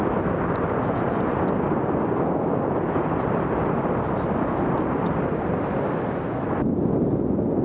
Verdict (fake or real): real